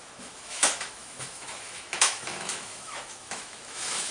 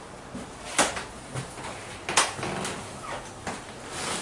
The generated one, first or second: first